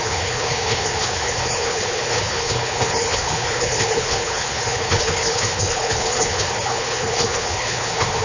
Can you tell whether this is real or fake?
fake